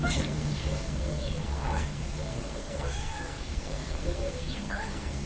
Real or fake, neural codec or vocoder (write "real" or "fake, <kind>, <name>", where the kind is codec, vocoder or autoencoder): fake, codec, SNAC